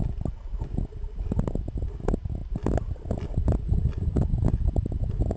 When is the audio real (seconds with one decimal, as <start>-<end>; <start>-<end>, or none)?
0.0-2.4; 4.2-5.4